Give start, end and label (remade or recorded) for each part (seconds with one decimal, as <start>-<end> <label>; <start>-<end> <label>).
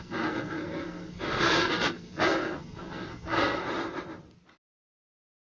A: 0.0-3.6 remade; 3.6-5.4 recorded